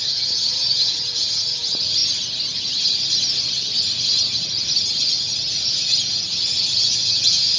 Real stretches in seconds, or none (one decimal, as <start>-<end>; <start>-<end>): 2.0-5.6

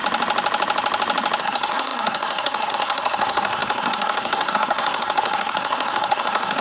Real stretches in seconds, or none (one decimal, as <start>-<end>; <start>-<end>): 0.0-1.4

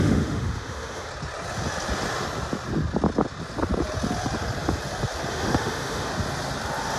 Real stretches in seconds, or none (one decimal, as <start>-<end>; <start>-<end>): 1.1-5.3; 6.1-7.0

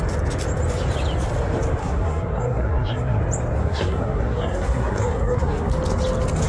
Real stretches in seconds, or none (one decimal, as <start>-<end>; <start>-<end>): 0.0-1.8; 3.2-3.6; 5.7-6.5

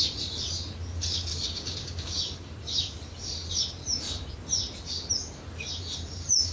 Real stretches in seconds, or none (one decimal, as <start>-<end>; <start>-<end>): 0.0-1.3; 2.2-6.5